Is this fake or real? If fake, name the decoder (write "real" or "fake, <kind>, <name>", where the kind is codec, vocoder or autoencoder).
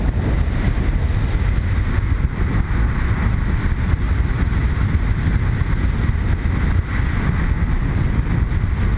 real